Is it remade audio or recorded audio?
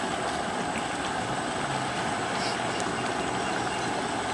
recorded